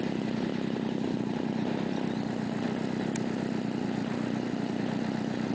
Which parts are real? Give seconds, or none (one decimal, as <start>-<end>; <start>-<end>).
0.0-5.5